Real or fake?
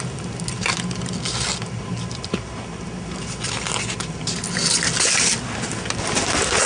real